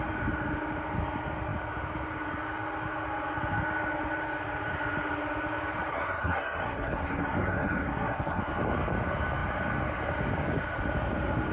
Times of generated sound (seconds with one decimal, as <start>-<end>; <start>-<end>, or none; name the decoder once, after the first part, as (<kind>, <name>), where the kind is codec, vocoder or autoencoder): 5.9-8.4 (codec, SNAC)